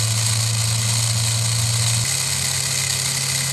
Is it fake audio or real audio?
real